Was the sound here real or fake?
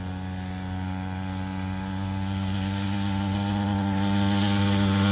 real